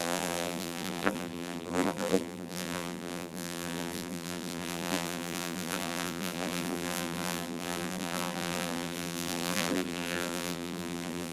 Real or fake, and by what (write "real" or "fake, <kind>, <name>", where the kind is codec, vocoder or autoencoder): fake, vocoder, BigVGAN v2